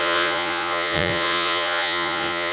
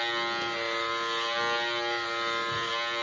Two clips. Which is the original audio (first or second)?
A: second